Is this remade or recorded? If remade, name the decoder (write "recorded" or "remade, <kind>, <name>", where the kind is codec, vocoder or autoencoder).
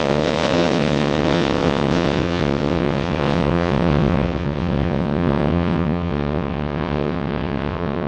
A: remade, vocoder, WaveNeXt